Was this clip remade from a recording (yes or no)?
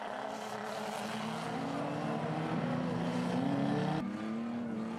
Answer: no